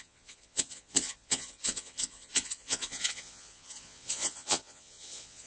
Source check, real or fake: fake